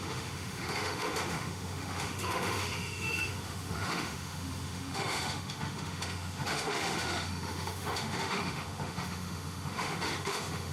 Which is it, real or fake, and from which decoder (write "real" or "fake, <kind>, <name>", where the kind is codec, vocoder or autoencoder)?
fake, autoencoder, DAC-VAE